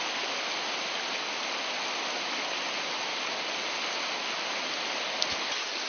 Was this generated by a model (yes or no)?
no